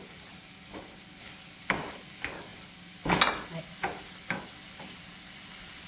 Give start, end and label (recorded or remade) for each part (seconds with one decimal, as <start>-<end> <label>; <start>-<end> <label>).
0.0-5.9 recorded